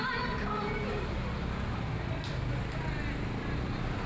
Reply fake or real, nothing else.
real